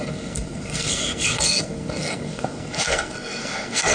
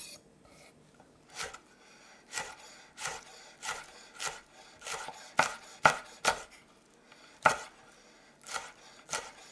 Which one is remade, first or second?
first